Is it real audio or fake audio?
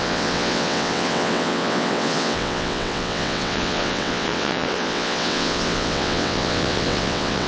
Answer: fake